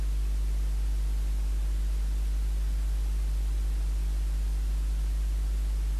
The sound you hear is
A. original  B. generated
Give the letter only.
A